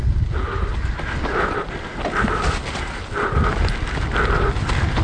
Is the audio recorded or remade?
recorded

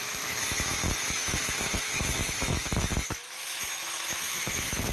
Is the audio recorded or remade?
remade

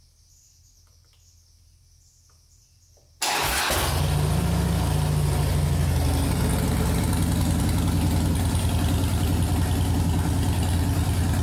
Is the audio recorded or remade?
recorded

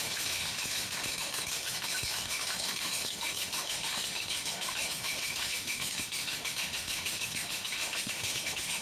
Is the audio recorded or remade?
remade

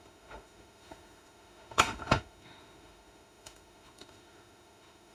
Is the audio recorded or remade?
remade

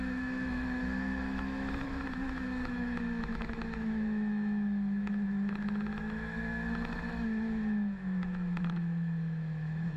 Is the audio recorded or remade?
remade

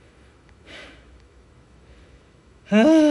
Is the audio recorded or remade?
remade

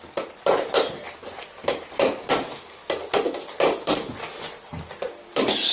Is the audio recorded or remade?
recorded